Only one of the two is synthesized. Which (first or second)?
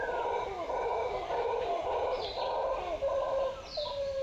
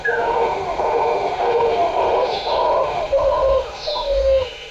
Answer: second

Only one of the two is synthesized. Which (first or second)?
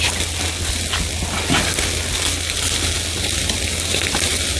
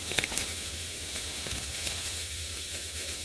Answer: second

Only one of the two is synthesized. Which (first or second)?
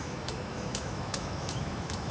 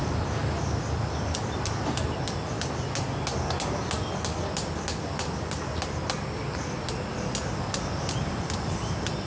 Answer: first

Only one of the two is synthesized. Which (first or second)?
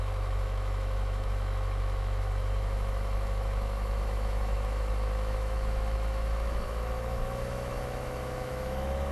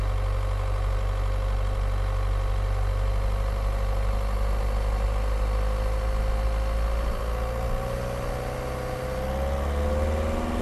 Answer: first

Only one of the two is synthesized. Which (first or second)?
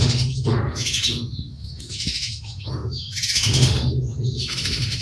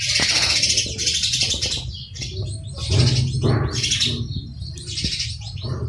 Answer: first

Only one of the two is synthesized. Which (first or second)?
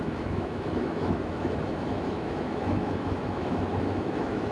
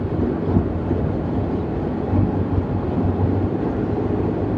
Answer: first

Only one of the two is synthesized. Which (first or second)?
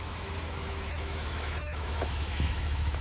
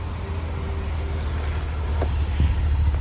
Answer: first